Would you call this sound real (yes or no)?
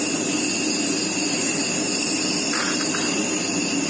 no